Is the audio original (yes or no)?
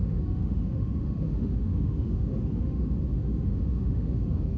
no